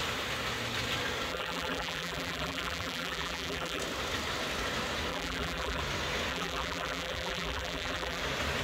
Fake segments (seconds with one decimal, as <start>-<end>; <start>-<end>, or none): 1.3-3.8; 5.1-5.8; 6.3-8.2